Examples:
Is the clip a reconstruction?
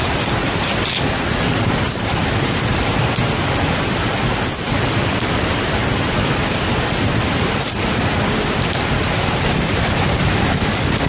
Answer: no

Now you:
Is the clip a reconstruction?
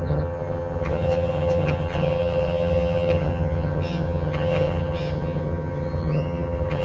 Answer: yes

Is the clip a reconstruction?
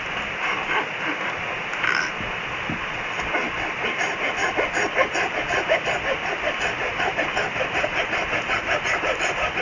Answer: no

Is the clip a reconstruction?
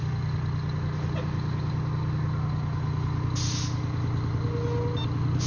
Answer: no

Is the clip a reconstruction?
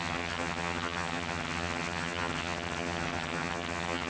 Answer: yes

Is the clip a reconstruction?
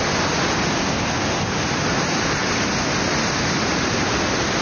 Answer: no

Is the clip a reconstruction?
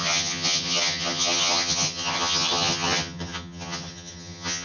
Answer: yes